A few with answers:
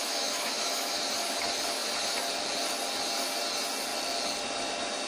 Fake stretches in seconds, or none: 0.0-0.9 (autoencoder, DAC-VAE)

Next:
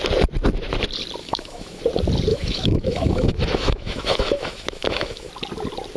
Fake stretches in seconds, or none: 1.2-1.8 (autoencoder, DAC-VAE); 2.3-5.3